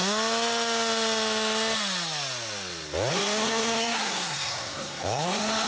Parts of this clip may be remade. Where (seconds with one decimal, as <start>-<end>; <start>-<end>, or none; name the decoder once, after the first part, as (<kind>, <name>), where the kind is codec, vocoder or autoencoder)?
3.1-5.7 (codec, SNAC)